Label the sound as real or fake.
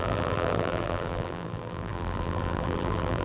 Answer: fake